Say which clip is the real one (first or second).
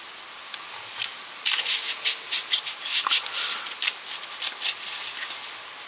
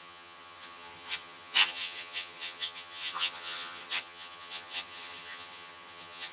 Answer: first